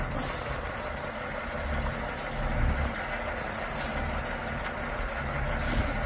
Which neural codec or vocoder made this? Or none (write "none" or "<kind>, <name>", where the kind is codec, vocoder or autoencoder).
none